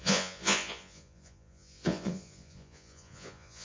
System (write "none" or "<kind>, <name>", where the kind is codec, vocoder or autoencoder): vocoder, Vocos